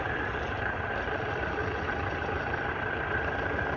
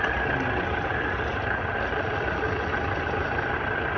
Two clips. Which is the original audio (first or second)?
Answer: second